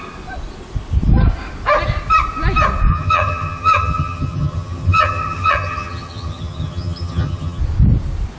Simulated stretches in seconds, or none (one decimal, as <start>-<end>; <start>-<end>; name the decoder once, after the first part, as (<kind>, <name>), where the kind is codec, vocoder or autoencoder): 2.9-7.6 (vocoder, HiFi-GAN)